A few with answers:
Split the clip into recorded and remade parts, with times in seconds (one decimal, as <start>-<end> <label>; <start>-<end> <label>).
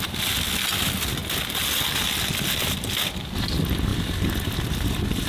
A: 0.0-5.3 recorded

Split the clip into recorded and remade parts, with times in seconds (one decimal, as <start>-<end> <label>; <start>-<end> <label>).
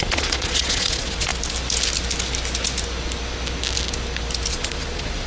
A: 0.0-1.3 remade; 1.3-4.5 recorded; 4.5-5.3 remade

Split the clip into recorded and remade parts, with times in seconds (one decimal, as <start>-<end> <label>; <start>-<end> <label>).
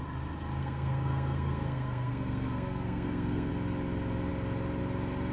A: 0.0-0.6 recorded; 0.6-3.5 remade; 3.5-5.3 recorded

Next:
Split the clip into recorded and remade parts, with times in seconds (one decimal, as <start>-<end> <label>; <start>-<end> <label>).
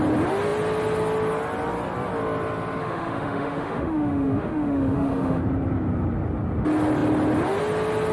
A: 0.0-2.8 recorded; 2.8-5.4 remade; 5.4-8.1 recorded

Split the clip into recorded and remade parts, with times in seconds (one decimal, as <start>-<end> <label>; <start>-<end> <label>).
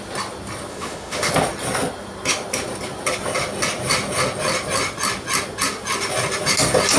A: 0.0-0.7 recorded; 0.7-1.3 remade; 1.3-7.0 recorded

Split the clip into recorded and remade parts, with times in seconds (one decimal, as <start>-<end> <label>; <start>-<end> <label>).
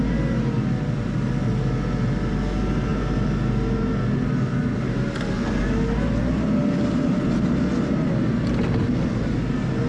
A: 0.0-9.9 recorded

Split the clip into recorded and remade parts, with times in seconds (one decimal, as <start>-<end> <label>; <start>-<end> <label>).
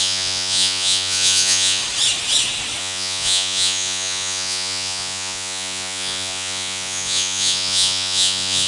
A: 0.0-1.8 remade; 1.8-2.8 recorded; 2.8-8.7 remade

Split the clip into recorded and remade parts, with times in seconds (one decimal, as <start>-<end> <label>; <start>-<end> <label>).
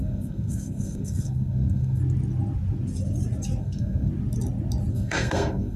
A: 0.0-2.0 remade; 2.0-3.6 recorded; 3.6-4.1 remade; 4.1-4.9 recorded; 4.9-5.8 remade